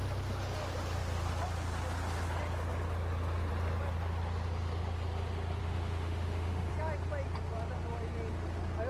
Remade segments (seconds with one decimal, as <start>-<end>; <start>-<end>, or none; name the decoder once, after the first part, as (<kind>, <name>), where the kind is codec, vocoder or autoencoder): 5.6-6.7 (autoencoder, DAC-VAE)